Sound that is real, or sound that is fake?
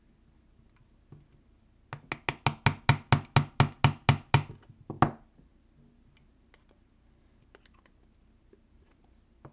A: real